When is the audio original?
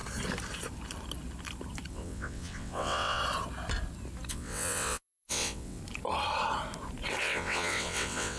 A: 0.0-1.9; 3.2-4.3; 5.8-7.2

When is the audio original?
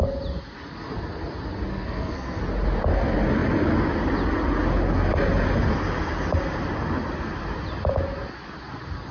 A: 0.0-1.7; 2.4-9.1